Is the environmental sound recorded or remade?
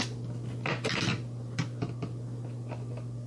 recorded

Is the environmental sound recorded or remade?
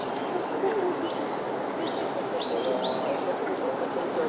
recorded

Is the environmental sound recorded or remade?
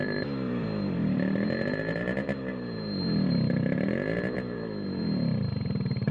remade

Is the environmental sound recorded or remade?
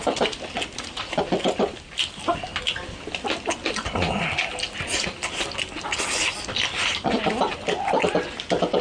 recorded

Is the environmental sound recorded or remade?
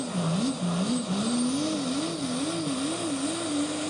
recorded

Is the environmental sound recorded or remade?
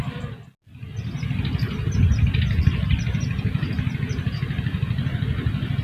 recorded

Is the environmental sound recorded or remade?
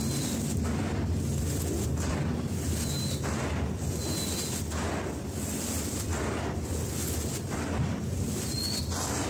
recorded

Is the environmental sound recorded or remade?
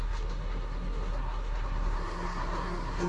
remade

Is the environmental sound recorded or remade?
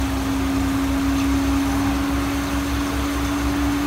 recorded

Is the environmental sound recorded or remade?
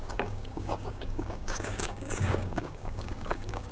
remade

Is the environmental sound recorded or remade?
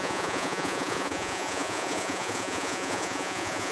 remade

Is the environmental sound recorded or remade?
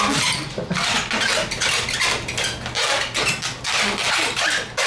recorded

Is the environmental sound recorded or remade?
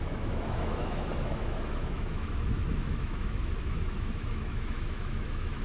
remade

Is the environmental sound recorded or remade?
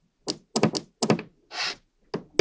recorded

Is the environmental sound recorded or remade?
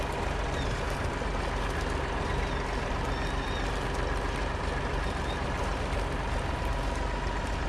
recorded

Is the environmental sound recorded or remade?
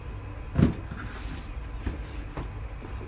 recorded